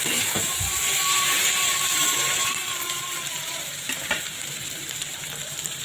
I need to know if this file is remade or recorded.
remade